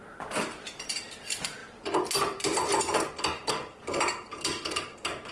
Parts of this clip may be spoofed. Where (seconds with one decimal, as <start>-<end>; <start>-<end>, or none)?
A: 0.0-1.6; 2.2-5.3